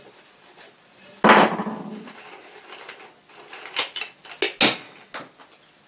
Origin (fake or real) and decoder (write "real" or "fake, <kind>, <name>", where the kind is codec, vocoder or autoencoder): real